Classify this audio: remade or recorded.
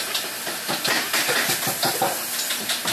recorded